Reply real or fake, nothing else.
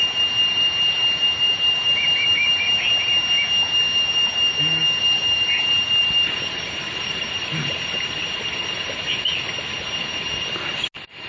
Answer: real